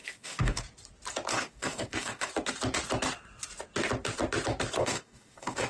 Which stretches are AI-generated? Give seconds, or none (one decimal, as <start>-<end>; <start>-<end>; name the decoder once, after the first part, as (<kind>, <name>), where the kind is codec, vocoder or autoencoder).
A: 0.0-0.6 (codec, DAC); 1.3-2.3; 4.8-5.7